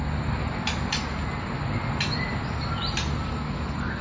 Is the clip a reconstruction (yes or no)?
no